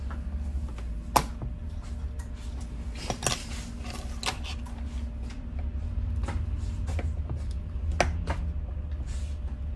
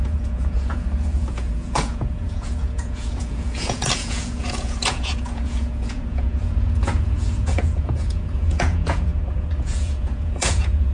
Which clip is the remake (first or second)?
second